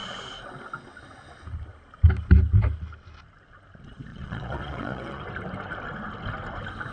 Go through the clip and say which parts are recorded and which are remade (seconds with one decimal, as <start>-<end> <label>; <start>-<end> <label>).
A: 0.0-4.1 recorded; 4.1-5.2 remade; 5.2-6.9 recorded